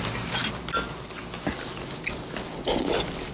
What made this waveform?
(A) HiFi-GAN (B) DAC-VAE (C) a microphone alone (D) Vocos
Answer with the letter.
C